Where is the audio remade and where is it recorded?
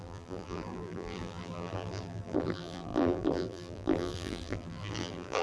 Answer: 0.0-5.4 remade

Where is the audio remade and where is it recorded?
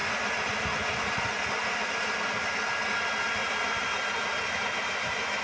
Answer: 0.0-3.4 recorded; 3.4-5.4 remade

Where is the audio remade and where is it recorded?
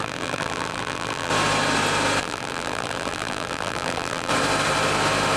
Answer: 0.0-1.3 remade; 1.3-2.2 recorded; 2.2-4.3 remade; 4.3-5.4 recorded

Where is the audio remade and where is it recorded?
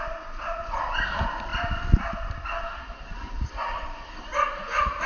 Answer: 0.0-5.1 recorded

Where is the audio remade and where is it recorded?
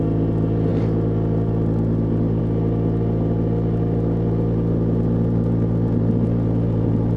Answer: 0.0-7.2 recorded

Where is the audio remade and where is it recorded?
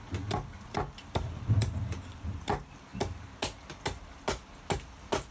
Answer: 0.0-1.6 recorded; 1.6-2.5 remade; 2.5-5.3 recorded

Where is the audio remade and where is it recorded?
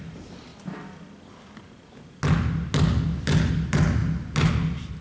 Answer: 0.0-5.0 recorded